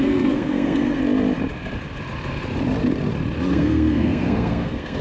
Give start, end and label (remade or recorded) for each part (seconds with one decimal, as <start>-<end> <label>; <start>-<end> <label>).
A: 0.0-1.0 remade; 1.0-3.5 recorded; 3.5-5.0 remade